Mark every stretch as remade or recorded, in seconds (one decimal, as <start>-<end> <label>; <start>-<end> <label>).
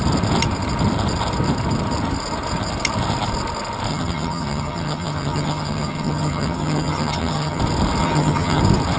0.0-3.9 recorded; 3.9-7.6 remade; 7.6-8.0 recorded; 8.0-8.6 remade; 8.6-9.0 recorded